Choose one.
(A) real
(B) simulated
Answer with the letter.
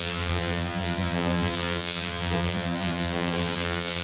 B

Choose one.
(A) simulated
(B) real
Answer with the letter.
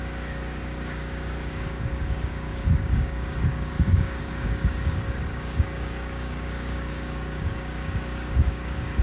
A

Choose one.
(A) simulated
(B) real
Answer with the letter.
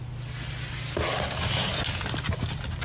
B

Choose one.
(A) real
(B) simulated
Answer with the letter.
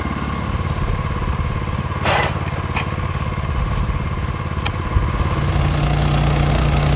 A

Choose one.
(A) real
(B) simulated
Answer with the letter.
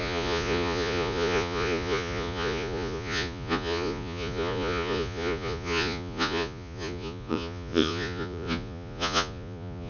B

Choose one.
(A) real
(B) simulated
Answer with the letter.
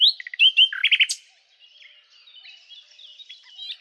A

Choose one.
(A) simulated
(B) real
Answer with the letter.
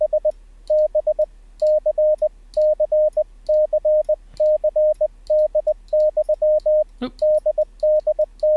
B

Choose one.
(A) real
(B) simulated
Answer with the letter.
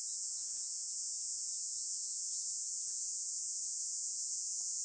B